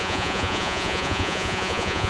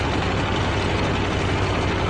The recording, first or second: second